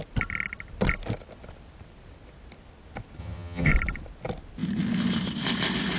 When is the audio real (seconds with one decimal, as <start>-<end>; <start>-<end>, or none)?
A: 0.0-3.2; 3.7-6.0